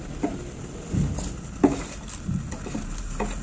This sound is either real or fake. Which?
real